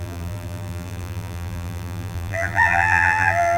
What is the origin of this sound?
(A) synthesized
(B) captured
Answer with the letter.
A